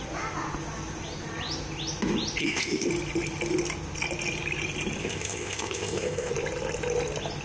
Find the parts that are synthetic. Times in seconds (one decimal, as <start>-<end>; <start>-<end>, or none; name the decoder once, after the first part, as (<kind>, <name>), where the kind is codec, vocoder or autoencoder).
2.4-2.9 (codec, ZipCodec); 5.0-6.3